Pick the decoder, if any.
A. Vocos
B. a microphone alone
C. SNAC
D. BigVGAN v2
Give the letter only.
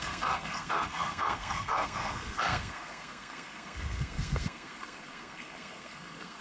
C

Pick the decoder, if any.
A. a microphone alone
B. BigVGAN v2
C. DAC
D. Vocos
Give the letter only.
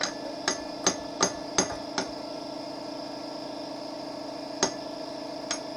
A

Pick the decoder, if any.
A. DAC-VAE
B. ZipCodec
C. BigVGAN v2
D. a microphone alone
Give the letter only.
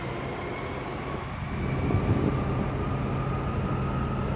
D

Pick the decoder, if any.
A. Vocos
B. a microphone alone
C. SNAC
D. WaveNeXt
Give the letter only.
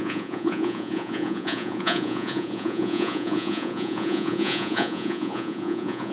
A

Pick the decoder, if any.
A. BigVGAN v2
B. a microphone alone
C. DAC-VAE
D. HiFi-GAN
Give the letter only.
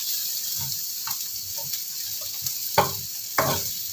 B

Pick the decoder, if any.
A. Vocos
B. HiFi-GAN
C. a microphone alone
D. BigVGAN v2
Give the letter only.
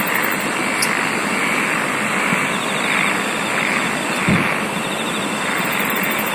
C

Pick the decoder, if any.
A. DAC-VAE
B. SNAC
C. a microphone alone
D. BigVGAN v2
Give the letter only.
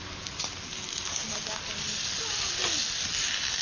C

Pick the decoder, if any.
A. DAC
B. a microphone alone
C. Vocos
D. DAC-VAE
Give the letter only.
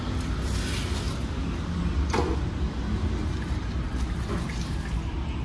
B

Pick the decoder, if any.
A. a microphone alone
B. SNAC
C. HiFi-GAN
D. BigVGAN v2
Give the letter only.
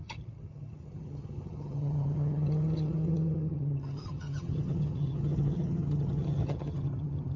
C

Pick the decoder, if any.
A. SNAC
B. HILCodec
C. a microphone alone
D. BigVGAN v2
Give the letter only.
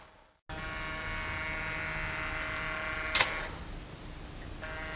C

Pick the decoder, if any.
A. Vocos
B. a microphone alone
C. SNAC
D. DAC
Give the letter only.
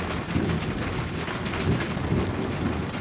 B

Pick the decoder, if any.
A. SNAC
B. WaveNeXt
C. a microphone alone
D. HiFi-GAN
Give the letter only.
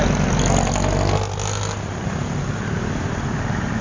C